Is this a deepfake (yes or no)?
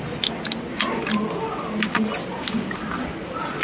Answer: no